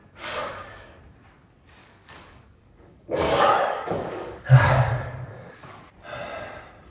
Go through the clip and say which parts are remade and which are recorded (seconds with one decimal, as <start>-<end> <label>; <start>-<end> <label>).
0.0-1.0 remade; 1.0-1.8 recorded; 1.8-5.8 remade; 5.8-6.9 recorded